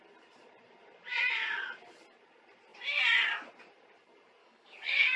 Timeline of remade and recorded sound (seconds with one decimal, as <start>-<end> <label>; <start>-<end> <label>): 0.0-4.4 recorded; 4.4-5.2 remade

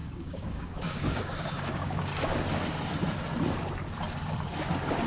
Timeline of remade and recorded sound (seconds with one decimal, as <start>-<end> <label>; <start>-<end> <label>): 0.0-2.1 remade; 2.1-5.1 recorded

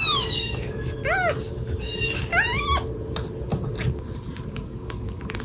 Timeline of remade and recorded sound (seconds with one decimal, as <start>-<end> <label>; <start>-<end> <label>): 0.0-1.0 remade; 1.0-1.8 recorded; 1.8-2.3 remade; 2.3-4.4 recorded; 4.4-5.4 remade

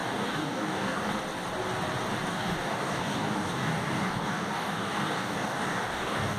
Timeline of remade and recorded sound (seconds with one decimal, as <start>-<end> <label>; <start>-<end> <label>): 0.0-1.1 remade; 1.1-2.3 recorded; 2.3-6.4 remade

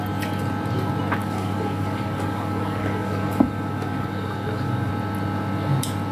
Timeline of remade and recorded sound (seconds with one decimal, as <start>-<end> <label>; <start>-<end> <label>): 0.0-1.2 recorded; 1.2-4.9 remade; 4.9-6.1 recorded

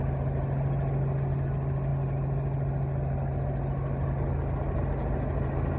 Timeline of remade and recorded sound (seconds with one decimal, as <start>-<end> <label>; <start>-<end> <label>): 0.0-5.8 recorded

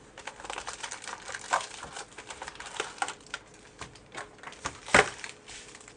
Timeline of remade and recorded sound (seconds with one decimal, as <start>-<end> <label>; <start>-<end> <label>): 0.0-6.0 recorded